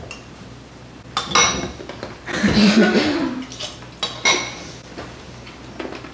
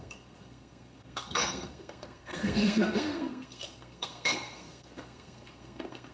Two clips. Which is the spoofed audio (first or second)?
second